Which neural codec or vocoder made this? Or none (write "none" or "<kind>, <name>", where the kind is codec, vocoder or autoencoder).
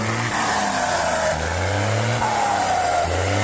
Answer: none